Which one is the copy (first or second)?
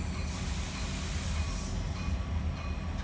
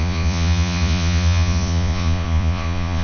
second